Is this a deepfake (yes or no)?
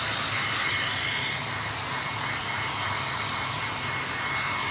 no